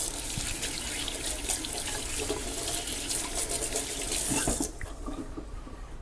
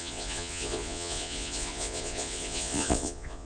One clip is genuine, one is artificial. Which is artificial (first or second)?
second